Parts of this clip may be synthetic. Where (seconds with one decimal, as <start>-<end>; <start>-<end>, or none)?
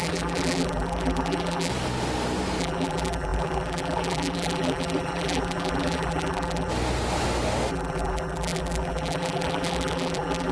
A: 0.0-1.7; 2.6-6.7; 7.7-10.5